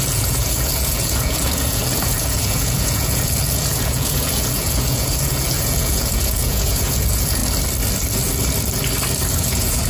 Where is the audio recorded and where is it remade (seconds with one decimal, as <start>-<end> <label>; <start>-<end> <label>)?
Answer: 0.0-7.4 remade; 7.4-9.3 recorded; 9.3-9.9 remade